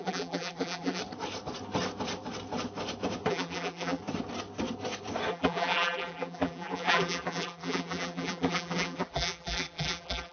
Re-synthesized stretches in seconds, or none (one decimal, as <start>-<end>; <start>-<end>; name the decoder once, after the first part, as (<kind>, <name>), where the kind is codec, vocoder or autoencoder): 0.0-1.0 (vocoder, BigVGAN v2); 3.3-4.0; 5.3-10.3